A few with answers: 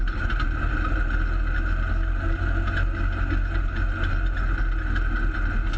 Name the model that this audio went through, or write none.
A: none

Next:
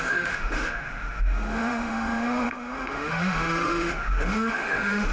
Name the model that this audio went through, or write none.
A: autoencoder, DAC-VAE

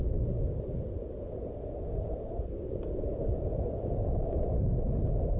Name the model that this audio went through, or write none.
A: none